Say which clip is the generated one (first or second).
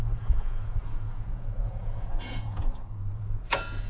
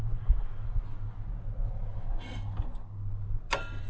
first